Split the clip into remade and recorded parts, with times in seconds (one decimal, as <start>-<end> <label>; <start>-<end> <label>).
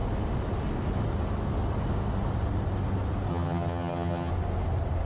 0.0-3.3 recorded; 3.3-4.3 remade; 4.3-5.1 recorded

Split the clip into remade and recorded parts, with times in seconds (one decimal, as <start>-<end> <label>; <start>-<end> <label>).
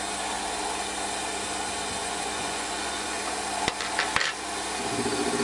0.0-2.0 recorded; 2.0-3.2 remade; 3.2-5.4 recorded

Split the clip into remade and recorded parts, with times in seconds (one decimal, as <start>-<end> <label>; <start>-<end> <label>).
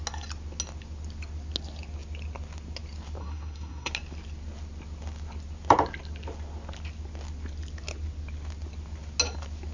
0.0-3.2 recorded; 3.2-3.9 remade; 3.9-9.7 recorded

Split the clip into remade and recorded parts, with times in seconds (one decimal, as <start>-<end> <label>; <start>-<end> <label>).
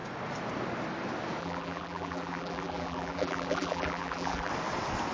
0.0-1.4 recorded; 1.4-4.5 remade; 4.5-5.1 recorded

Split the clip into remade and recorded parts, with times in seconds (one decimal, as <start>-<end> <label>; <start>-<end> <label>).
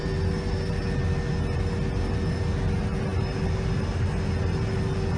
0.0-5.2 recorded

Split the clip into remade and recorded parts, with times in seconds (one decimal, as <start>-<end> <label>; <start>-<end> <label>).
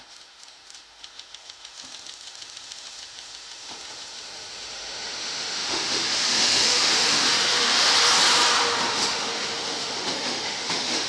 0.0-7.9 remade; 7.9-8.9 recorded; 8.9-11.1 remade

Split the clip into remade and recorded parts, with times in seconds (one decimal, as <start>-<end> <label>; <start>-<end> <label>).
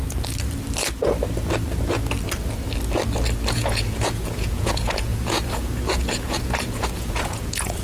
0.0-3.5 recorded; 3.5-7.8 remade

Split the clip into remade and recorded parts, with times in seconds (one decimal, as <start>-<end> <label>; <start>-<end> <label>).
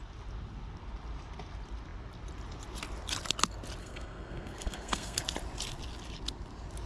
0.0-3.8 recorded; 3.8-5.2 remade; 5.2-6.9 recorded